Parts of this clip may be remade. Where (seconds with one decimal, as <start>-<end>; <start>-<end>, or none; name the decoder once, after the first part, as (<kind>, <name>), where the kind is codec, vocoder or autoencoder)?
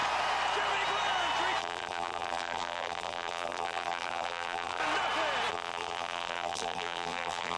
1.6-4.8 (vocoder, BigVGAN v2); 5.5-7.6